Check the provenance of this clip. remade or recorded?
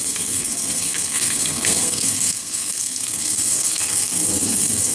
remade